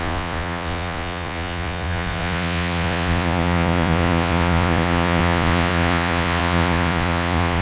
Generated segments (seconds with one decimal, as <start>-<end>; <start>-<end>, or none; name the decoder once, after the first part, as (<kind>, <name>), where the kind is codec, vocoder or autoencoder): 0.0-7.6 (vocoder, Vocos)